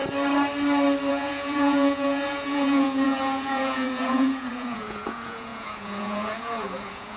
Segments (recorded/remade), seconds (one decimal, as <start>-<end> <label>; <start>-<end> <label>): 0.0-1.1 recorded; 1.1-7.2 remade